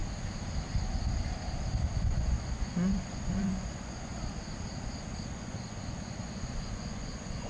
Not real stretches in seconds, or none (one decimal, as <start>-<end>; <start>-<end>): 1.9-4.1; 5.3-7.5

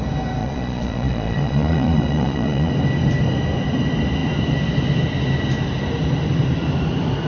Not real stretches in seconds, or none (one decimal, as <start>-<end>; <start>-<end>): 0.4-2.7

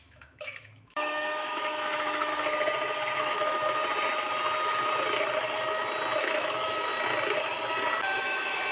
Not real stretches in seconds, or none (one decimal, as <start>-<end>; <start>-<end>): 0.0-2.3; 3.2-3.8; 6.2-6.9; 8.2-8.7

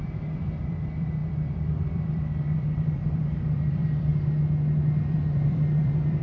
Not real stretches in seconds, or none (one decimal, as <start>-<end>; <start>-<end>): 0.6-4.1; 5.1-6.2

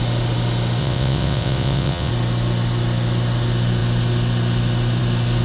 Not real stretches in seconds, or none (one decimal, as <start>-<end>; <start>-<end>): 0.8-2.1

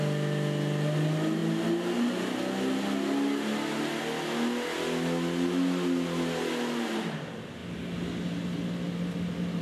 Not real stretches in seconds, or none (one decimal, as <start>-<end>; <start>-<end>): none

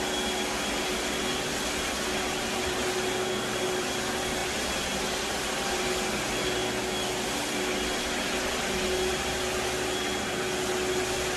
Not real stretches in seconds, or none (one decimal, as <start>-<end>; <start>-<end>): none

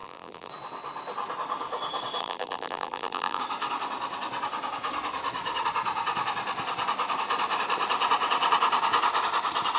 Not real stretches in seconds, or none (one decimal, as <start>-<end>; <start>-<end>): 0.0-0.5; 2.2-3.4